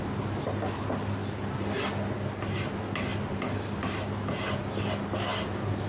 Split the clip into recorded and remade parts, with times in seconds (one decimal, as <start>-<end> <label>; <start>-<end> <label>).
0.0-5.9 recorded